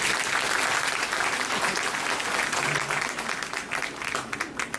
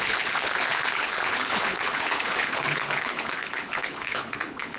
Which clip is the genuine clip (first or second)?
first